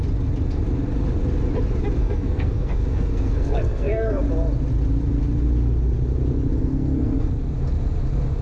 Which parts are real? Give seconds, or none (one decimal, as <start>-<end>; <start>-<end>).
0.0-2.0; 4.2-6.5; 7.3-8.4